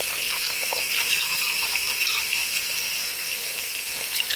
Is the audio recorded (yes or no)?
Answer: no